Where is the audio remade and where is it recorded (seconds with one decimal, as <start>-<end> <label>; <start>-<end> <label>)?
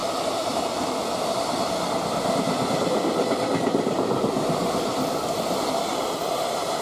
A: 0.0-6.8 recorded